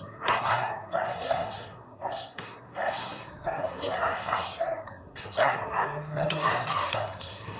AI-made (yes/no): yes